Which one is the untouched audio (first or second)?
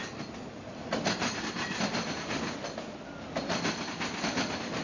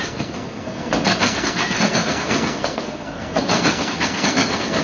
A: first